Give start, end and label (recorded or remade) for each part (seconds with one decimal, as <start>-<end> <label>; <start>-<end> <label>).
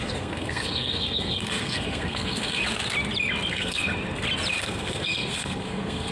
0.0-2.6 remade; 2.6-3.5 recorded; 3.5-3.9 remade; 3.9-4.6 recorded; 4.6-6.1 remade